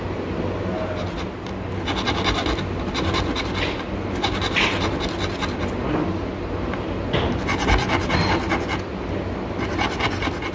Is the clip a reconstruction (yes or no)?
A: no